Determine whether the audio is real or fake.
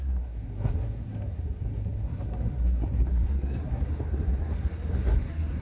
fake